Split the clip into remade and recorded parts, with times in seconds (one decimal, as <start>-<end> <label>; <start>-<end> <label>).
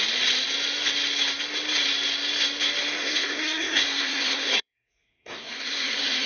0.0-3.0 recorded; 3.0-6.3 remade